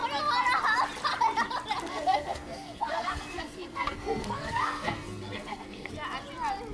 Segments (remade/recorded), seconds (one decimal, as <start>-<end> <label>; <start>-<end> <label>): 0.0-1.9 recorded; 1.9-5.9 remade; 5.9-6.7 recorded